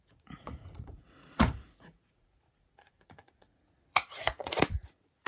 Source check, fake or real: fake